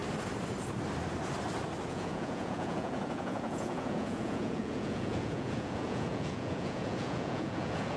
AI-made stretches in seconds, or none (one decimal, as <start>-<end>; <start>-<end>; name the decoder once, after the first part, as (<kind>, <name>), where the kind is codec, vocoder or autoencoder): 1.9-8.0 (vocoder, Vocos)